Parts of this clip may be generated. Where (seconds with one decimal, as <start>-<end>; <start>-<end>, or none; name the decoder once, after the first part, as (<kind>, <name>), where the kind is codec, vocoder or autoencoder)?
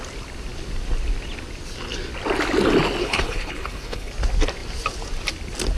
3.0-4.1 (codec, HILCodec)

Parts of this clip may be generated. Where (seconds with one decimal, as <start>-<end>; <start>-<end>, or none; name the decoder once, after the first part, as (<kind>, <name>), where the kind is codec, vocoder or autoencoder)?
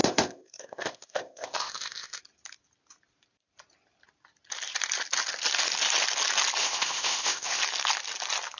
0.0-2.2 (codec, ZipCodec); 6.6-7.6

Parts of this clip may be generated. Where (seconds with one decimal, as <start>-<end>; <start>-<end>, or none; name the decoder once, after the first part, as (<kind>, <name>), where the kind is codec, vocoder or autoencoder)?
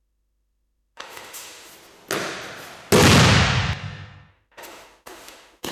0.0-1.7 (autoencoder, DAC-VAE); 4.3-5.7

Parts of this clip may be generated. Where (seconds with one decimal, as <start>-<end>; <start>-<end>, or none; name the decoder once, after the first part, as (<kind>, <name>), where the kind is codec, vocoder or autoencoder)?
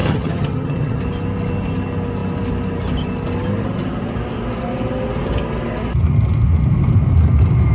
0.0-1.0 (vocoder, HiFi-GAN)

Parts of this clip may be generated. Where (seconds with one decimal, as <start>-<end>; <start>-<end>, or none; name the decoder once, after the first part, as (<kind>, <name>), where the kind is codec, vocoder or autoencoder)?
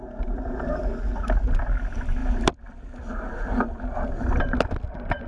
2.2-4.4 (vocoder, BigVGAN v2)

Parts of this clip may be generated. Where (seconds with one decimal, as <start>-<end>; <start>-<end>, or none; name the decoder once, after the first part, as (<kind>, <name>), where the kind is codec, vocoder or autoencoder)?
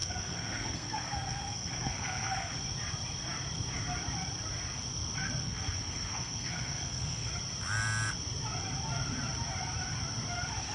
0.0-2.5 (codec, SNAC); 5.4-7.3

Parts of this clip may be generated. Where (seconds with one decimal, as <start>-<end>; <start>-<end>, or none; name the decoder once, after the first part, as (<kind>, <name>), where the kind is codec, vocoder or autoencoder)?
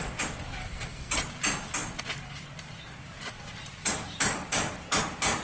0.6-1.1 (codec, SNAC)